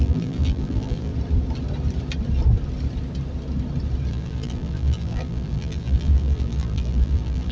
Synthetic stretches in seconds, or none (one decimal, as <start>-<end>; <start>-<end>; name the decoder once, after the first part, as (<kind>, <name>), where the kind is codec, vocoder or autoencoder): 0.0-1.1 (vocoder, BigVGAN v2); 4.1-7.5